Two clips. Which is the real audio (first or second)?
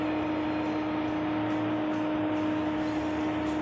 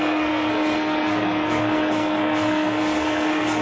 first